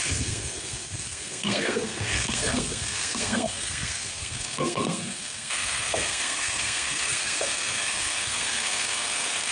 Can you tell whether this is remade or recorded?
remade